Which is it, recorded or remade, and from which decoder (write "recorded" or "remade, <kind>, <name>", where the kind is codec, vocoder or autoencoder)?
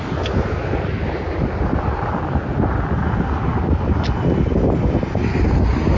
recorded